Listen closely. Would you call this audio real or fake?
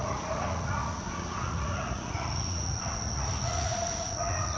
fake